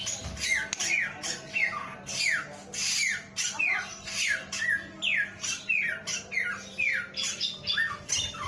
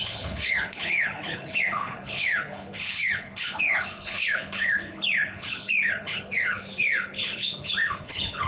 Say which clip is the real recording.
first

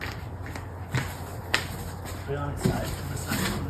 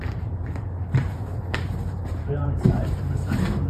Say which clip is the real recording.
first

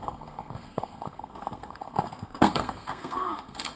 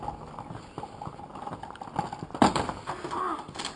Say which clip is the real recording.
second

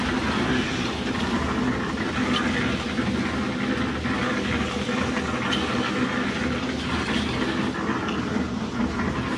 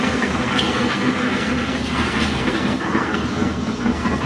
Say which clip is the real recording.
first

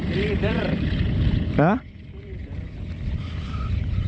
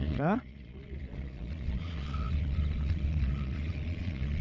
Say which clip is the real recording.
first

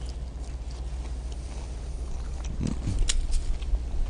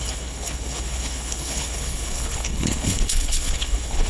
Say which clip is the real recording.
first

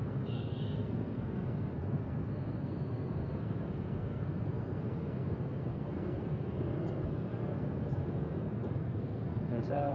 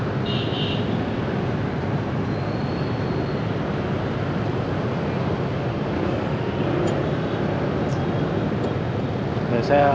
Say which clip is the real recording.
second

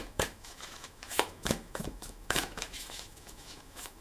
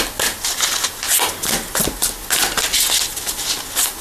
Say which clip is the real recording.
second